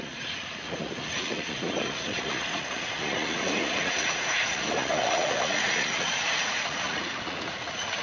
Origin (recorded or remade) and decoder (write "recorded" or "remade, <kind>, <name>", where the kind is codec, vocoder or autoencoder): remade, vocoder, Vocos